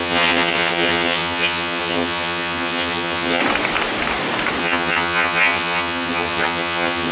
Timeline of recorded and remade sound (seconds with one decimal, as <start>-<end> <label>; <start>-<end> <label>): 0.0-3.4 remade; 3.4-4.6 recorded; 4.6-7.1 remade

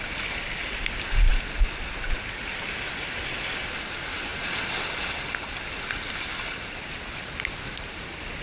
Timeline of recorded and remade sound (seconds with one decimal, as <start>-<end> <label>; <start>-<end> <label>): 0.0-8.4 recorded

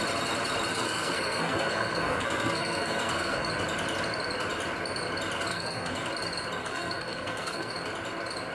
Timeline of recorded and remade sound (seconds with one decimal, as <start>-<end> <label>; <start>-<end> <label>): 0.0-0.7 recorded; 0.7-3.5 remade; 3.5-5.5 recorded; 5.5-6.1 remade; 6.1-6.6 recorded; 6.6-7.7 remade; 7.7-8.5 recorded

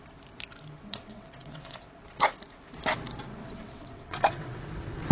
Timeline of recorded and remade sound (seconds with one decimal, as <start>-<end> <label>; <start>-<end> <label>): 0.0-0.9 recorded; 0.9-2.0 remade; 2.0-3.3 recorded; 3.3-4.6 remade; 4.6-5.1 recorded

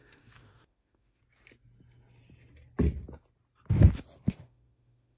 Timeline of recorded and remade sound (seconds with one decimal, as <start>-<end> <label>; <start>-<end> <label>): 0.0-1.2 remade; 1.2-4.3 recorded; 4.3-5.2 remade

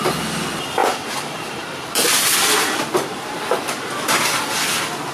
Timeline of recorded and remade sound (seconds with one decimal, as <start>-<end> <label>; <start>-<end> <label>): 0.0-0.8 recorded; 0.8-3.9 remade; 3.9-5.1 recorded